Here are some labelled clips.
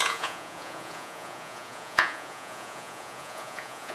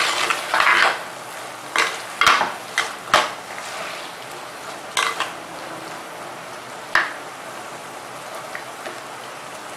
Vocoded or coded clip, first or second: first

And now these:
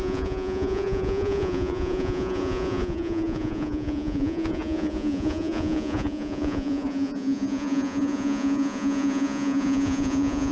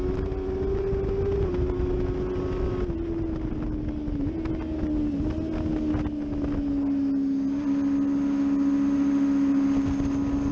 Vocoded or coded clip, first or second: first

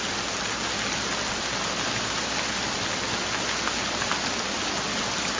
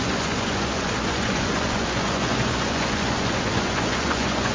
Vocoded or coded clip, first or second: second